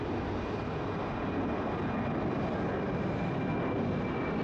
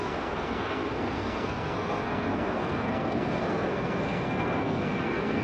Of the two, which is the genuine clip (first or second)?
first